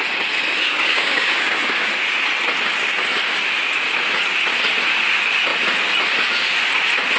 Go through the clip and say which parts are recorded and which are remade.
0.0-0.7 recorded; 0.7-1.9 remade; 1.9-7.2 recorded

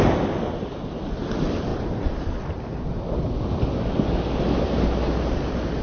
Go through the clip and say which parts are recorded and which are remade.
0.0-5.8 recorded

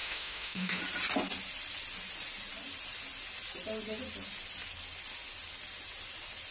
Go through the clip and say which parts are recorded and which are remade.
0.0-0.8 remade; 0.8-6.5 recorded